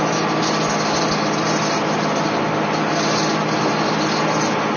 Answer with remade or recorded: recorded